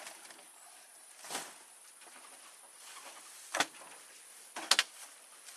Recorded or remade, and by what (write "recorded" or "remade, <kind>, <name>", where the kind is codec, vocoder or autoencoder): recorded